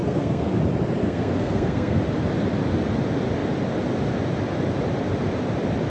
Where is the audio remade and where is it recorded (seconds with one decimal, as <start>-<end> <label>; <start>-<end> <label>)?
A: 0.0-0.6 remade; 0.6-1.0 recorded; 1.0-2.0 remade; 2.0-5.9 recorded